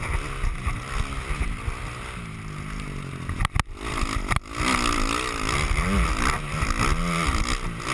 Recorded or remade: recorded